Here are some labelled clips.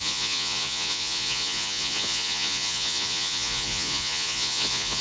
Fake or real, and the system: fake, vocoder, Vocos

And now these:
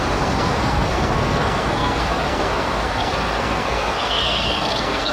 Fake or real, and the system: fake, codec, SNAC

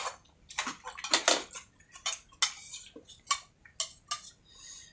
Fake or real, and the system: real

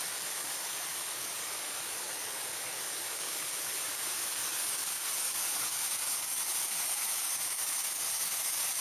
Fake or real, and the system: fake, codec, DAC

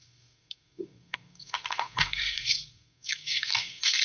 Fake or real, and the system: fake, codec, SNAC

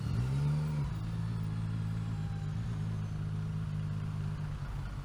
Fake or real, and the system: real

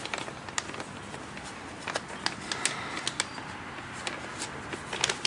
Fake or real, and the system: real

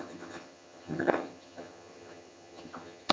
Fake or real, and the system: fake, vocoder, HiFi-GAN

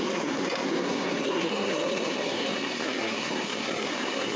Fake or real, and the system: fake, codec, SNAC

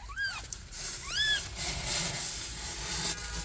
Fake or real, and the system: real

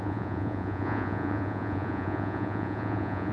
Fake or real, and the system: fake, vocoder, Vocos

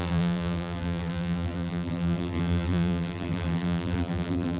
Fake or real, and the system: fake, vocoder, BigVGAN v2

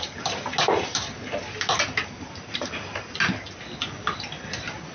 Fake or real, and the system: real